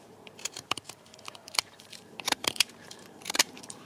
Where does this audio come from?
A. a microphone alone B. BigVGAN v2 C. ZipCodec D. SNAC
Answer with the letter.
B